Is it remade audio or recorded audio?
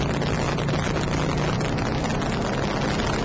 recorded